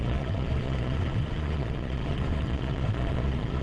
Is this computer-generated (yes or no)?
yes